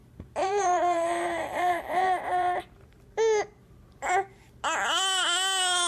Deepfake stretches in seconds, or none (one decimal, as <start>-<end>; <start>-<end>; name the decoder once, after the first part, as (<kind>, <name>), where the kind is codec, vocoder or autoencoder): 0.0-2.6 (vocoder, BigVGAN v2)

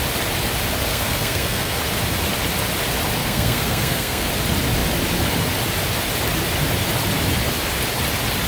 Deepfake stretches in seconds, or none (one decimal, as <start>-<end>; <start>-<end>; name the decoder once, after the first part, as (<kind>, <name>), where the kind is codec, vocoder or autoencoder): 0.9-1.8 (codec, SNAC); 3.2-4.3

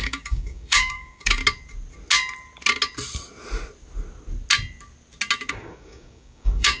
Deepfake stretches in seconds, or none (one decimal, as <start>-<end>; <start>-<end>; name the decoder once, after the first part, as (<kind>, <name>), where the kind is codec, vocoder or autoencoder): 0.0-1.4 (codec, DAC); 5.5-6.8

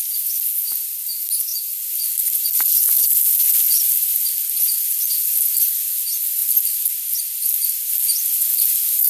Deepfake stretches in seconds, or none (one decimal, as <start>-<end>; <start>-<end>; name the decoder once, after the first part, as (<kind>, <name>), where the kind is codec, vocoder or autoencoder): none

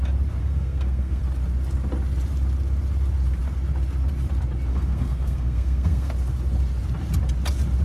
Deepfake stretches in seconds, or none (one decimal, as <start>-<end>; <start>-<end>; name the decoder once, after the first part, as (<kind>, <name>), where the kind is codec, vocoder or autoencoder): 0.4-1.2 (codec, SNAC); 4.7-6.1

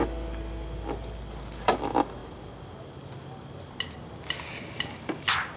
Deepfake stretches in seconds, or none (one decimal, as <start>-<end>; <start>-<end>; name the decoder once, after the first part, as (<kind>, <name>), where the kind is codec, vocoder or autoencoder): none

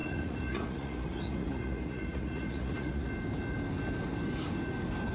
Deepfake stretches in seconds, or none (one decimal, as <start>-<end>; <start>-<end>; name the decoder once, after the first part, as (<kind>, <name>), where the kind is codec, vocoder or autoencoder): 0.0-3.1 (vocoder, Vocos)